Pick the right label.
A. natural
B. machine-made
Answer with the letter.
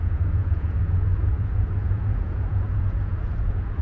B